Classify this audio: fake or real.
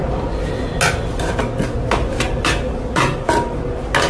real